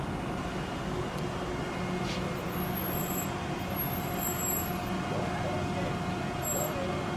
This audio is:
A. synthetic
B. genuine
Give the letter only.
B